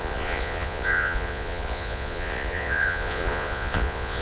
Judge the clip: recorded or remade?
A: remade